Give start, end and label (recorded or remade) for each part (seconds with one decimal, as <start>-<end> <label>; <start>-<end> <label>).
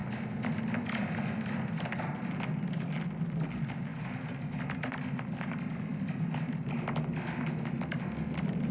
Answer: 0.0-8.7 recorded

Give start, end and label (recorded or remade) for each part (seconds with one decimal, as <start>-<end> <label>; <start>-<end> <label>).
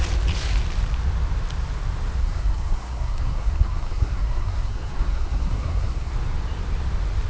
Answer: 0.0-2.2 recorded; 2.2-6.1 remade; 6.1-7.3 recorded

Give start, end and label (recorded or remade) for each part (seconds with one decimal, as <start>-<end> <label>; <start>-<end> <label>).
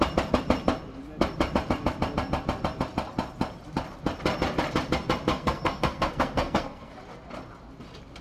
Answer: 0.0-5.3 recorded; 5.3-6.9 remade; 6.9-8.2 recorded